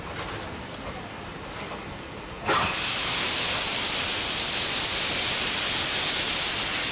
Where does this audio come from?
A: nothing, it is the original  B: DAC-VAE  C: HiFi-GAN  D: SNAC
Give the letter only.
A